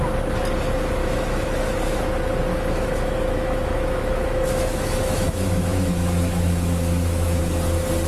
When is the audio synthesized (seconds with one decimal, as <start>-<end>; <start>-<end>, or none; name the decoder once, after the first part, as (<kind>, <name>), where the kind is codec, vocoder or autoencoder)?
1.0-1.5 (autoencoder, DAC-VAE); 2.5-7.4